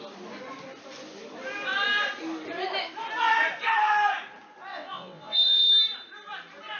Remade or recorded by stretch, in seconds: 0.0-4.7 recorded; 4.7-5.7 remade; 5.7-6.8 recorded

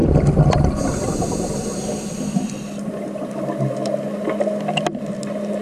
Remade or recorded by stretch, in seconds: 0.0-3.4 remade; 3.4-5.6 recorded

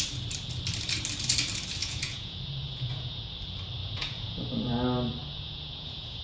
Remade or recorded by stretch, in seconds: 0.0-1.8 recorded; 1.8-3.3 remade; 3.3-3.8 recorded; 3.8-4.7 remade; 4.7-5.2 recorded; 5.2-6.2 remade

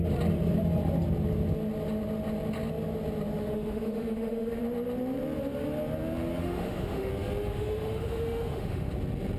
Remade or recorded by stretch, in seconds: 0.0-3.4 recorded; 3.4-4.6 remade; 4.6-6.4 recorded; 6.4-7.1 remade; 7.1-7.5 recorded; 7.5-8.9 remade; 8.9-9.4 recorded